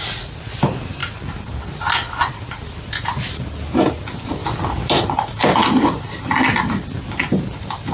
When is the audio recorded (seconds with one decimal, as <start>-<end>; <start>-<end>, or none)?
1.0-2.3; 4.4-4.9